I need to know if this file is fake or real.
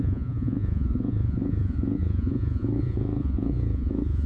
fake